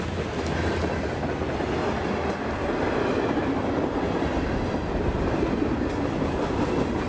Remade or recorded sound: recorded